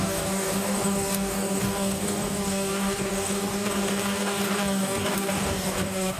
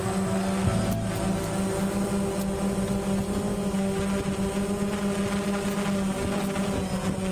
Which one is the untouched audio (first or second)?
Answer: second